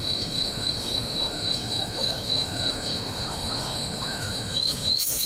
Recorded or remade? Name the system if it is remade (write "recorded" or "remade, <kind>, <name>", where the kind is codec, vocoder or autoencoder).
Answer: remade, autoencoder, DAC-VAE